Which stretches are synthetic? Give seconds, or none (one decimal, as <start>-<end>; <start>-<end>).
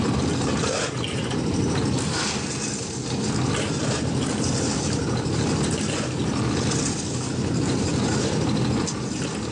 none